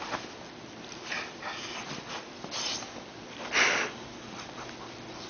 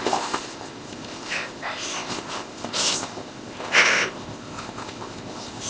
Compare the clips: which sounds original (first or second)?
first